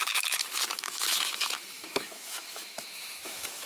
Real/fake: fake